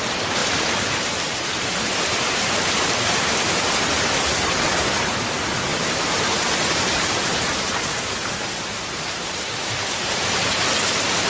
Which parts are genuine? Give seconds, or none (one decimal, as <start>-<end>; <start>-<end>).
0.0-0.4; 3.6-5.7; 9.7-11.3